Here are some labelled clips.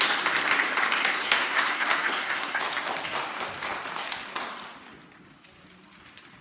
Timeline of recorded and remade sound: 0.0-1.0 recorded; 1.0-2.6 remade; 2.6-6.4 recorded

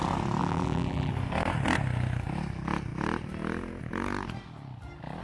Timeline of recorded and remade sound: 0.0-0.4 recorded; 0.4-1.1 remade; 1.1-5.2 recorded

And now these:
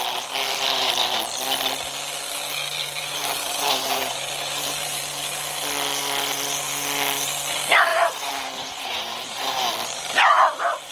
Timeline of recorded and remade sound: 0.0-2.8 recorded; 2.8-5.0 remade; 5.0-7.9 recorded; 7.9-9.7 remade; 9.7-10.9 recorded